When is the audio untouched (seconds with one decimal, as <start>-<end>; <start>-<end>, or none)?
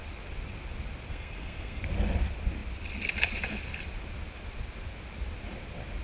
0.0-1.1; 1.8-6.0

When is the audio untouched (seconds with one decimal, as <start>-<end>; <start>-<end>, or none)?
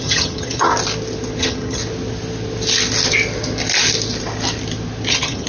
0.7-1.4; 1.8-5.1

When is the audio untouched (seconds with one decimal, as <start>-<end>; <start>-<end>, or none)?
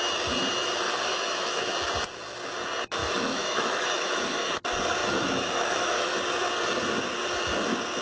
0.0-1.1; 1.6-3.0; 4.5-5.0; 6.2-8.0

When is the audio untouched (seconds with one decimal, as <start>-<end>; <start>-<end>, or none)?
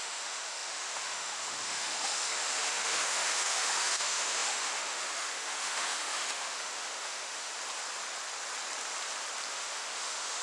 7.5-9.5